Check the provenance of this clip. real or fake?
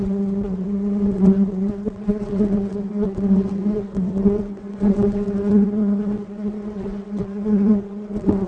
fake